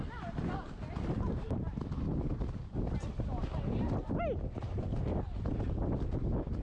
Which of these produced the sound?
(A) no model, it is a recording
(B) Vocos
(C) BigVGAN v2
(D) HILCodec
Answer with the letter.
A